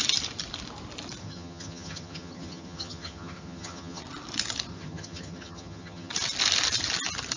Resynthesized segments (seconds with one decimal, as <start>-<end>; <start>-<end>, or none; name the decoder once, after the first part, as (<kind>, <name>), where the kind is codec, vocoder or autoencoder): 1.2-4.0 (vocoder, HiFi-GAN); 4.7-6.1

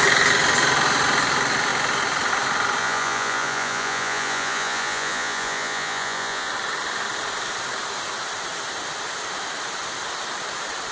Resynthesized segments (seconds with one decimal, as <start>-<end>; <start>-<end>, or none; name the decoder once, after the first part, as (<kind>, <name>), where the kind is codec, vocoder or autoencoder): 2.8-6.5 (vocoder, Vocos)